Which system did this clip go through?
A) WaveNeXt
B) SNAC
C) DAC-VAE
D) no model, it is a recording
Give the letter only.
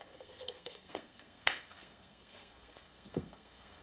B